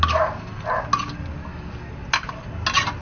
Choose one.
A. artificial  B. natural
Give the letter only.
B